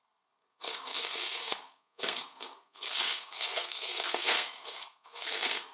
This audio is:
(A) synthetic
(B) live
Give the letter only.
A